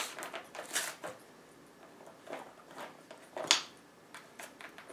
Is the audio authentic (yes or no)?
yes